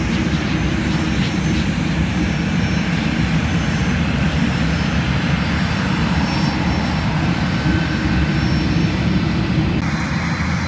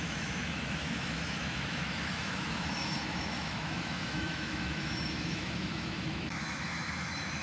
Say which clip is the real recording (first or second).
first